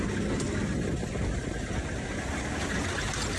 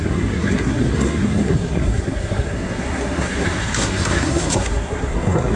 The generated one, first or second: second